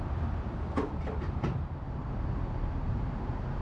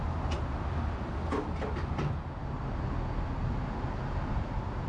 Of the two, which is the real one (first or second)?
second